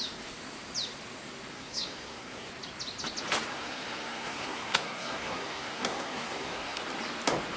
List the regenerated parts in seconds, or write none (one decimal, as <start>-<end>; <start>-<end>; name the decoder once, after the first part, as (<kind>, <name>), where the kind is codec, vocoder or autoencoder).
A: 1.5-2.5 (codec, SNAC); 3.5-6.8